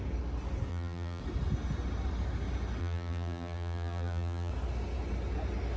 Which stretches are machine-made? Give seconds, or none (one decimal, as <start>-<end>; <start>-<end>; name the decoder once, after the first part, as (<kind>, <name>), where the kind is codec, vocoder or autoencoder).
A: 0.7-1.2 (vocoder, BigVGAN v2); 2.8-4.5